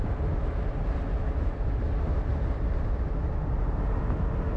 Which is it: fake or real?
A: real